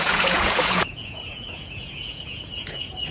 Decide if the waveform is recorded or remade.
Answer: remade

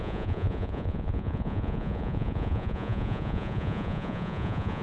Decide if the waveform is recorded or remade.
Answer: remade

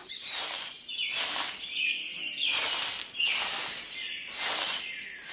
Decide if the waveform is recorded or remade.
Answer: recorded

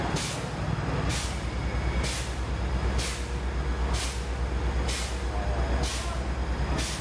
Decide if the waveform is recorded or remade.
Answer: recorded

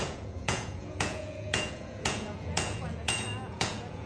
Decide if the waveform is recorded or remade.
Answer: remade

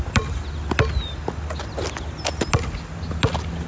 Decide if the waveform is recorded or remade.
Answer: recorded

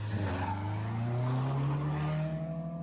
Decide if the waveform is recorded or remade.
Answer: recorded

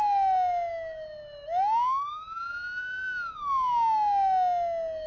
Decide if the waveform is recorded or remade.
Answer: recorded